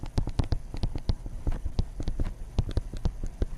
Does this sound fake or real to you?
real